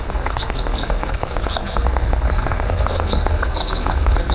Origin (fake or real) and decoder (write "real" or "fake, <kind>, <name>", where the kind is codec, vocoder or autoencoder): fake, codec, SNAC